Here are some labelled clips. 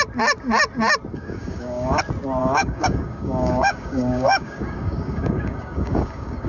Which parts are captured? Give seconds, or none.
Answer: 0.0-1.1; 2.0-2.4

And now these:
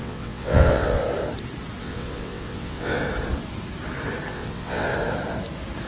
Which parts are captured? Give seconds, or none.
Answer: 1.0-1.8; 3.0-4.3; 4.9-5.9

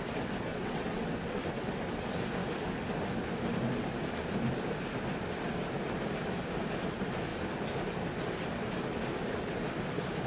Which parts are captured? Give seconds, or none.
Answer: 0.0-0.5; 1.4-10.3

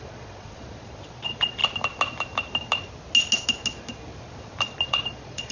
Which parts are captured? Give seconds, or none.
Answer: 1.6-4.9

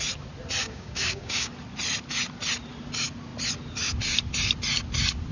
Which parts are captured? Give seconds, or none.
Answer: 0.0-0.6; 1.5-5.3

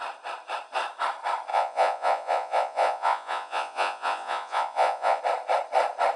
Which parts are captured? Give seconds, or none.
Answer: 0.0-1.5; 5.2-6.2

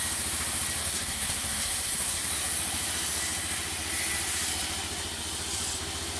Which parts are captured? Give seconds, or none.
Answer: 0.0-0.8; 2.2-6.2